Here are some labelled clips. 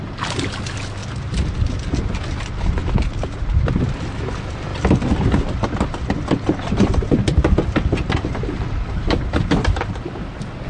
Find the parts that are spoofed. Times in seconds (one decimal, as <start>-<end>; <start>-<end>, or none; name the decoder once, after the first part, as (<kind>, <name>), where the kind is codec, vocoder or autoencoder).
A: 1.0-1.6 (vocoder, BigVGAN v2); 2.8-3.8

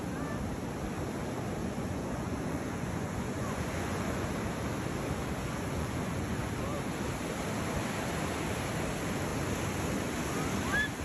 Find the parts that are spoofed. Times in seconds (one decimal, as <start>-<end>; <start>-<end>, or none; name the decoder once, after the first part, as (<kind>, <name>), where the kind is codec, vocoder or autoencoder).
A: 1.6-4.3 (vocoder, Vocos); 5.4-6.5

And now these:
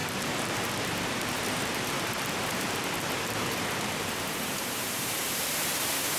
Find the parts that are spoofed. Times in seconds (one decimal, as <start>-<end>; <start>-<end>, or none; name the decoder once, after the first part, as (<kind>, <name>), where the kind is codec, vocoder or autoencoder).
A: 0.0-6.2 (vocoder, BigVGAN v2)

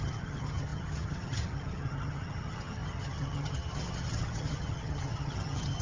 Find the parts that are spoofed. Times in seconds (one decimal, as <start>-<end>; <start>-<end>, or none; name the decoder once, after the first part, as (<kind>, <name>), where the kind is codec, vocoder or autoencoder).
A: 0.0-5.8 (vocoder, HiFi-GAN)

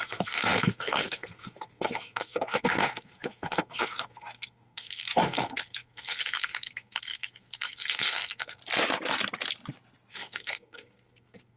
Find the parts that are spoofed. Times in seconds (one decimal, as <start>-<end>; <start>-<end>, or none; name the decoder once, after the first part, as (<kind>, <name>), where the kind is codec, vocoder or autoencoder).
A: 0.0-8.6 (codec, SNAC); 10.1-11.6

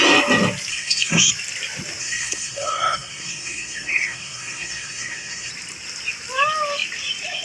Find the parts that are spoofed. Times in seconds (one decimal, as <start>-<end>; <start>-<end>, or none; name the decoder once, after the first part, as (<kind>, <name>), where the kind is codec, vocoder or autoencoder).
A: 0.7-1.3 (codec, SNAC); 2.0-5.5